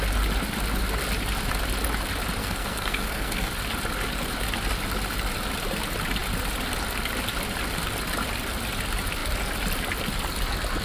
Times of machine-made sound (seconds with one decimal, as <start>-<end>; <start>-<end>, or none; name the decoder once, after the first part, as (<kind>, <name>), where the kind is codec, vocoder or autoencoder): 2.4-3.5 (codec, SNAC)